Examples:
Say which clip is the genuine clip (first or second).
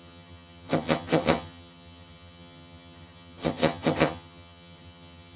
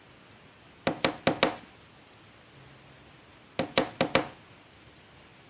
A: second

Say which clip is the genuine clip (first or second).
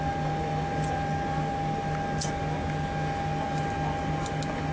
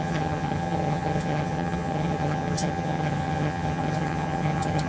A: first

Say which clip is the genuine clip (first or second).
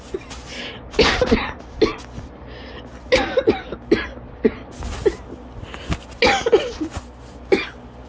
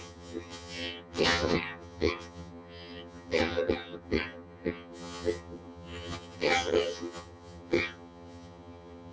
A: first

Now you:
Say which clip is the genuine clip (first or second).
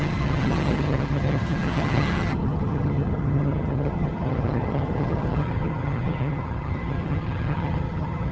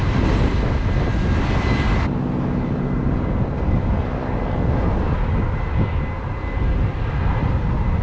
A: second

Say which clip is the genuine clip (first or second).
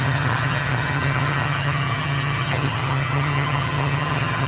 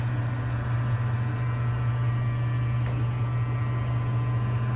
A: second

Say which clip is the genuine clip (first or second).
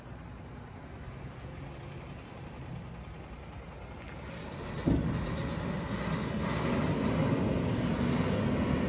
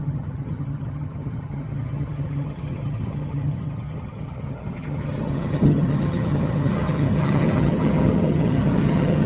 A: first